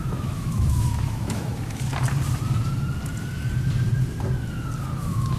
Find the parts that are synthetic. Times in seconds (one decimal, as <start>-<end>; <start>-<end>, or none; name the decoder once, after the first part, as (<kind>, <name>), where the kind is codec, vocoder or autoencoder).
0.0-1.9 (autoencoder, DAC-VAE); 5.0-5.4